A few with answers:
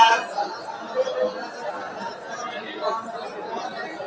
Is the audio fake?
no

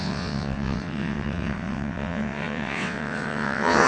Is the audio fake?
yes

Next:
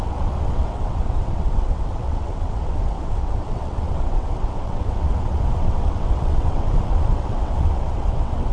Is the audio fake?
yes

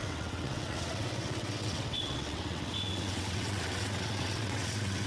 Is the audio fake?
yes